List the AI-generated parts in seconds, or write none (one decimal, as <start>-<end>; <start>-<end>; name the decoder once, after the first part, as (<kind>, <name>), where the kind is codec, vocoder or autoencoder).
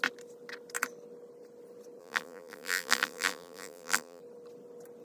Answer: 2.0-4.2 (vocoder, BigVGAN v2)